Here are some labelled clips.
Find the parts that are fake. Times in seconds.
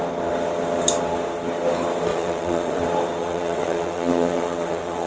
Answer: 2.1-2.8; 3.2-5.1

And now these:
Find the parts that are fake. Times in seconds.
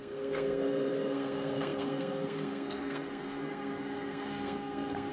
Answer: 0.0-5.1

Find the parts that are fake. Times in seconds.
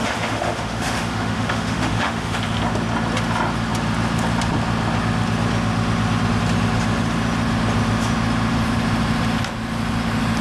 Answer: 0.0-2.4